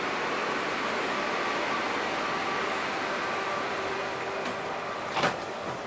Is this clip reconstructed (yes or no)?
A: no